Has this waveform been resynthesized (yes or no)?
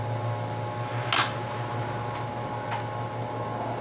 no